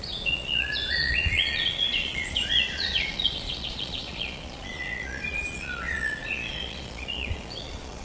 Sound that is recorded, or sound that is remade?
remade